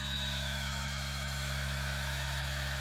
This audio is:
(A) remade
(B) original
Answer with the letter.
A